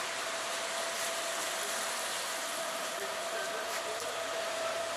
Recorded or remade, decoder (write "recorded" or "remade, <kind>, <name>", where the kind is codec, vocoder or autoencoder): remade, vocoder, BigVGAN v2